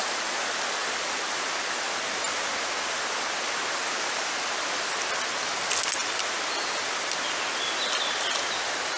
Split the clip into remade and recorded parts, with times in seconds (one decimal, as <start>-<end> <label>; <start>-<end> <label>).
0.0-9.0 recorded

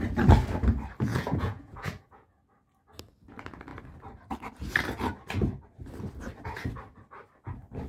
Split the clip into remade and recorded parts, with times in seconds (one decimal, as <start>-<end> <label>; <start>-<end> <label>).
0.0-1.1 recorded; 1.1-2.4 remade; 2.4-7.9 recorded

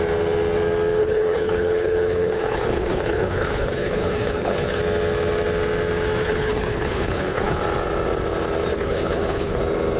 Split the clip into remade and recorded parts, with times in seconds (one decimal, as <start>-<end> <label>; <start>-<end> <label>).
0.0-1.0 recorded; 1.0-4.8 remade; 4.8-6.2 recorded; 6.2-7.6 remade; 7.6-8.7 recorded; 8.7-9.6 remade; 9.6-10.0 recorded

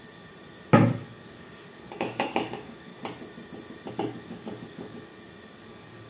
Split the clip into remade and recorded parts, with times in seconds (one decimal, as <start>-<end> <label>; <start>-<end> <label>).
0.0-1.0 recorded; 1.0-2.9 remade; 2.9-3.9 recorded; 3.9-5.1 remade; 5.1-5.6 recorded; 5.6-6.1 remade